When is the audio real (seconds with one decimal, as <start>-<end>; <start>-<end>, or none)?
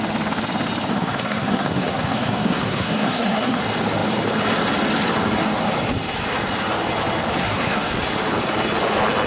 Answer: 0.0-0.9; 3.6-7.4; 8.0-9.3